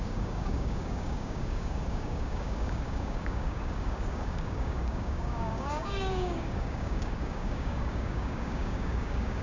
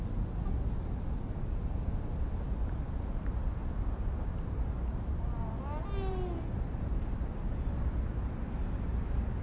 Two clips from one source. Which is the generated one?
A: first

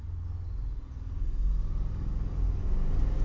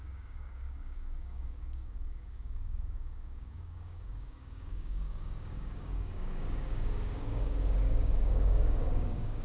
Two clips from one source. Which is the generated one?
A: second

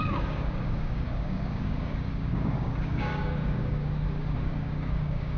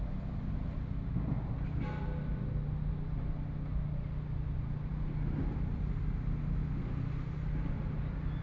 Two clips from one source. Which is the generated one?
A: first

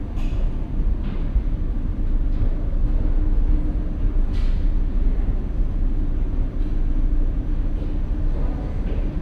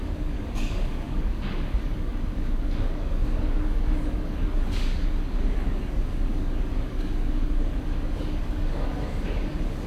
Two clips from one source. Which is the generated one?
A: second